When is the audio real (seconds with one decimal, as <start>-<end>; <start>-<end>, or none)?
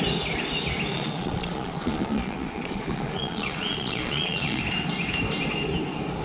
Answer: 0.0-0.9; 4.6-6.2